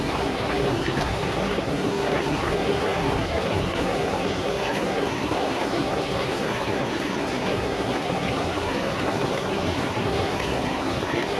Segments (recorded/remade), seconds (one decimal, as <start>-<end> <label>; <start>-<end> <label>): 0.0-11.4 remade